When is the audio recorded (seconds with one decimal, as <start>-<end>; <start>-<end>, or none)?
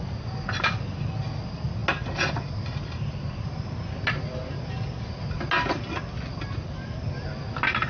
0.0-7.9